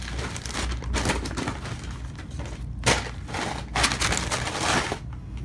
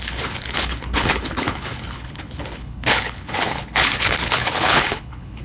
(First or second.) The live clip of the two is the first